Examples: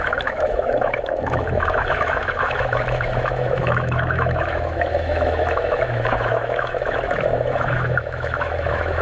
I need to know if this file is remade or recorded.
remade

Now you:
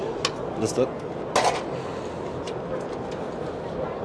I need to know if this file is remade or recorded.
recorded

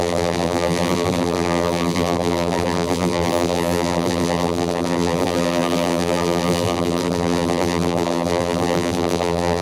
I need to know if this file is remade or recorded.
remade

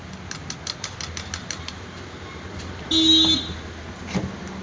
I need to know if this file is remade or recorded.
recorded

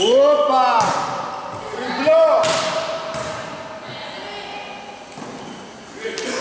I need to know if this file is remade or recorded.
recorded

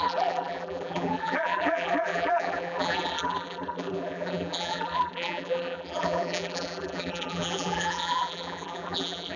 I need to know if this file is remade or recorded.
remade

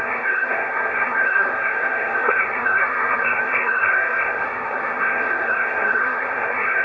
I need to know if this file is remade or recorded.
remade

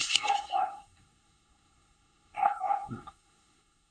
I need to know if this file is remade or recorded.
remade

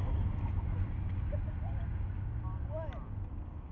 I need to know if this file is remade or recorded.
recorded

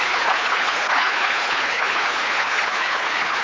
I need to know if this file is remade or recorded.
remade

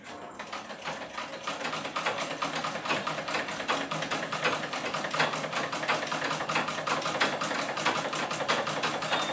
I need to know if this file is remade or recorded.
recorded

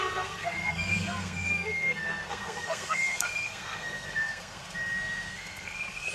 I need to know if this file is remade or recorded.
remade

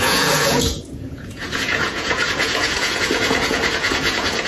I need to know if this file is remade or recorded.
remade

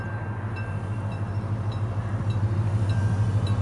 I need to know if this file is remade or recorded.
recorded